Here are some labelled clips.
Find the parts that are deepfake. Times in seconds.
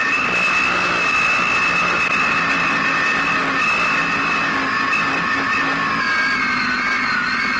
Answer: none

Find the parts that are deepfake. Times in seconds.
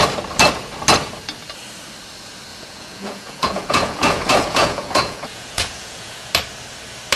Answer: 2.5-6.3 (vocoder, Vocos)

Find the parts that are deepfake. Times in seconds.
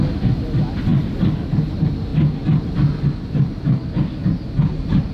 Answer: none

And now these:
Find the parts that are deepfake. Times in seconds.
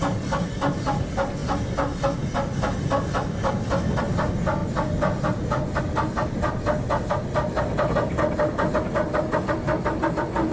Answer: none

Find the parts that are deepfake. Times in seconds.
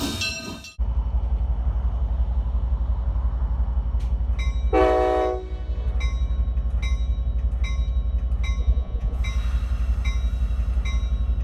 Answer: 8.6-9.2 (vocoder, Vocos)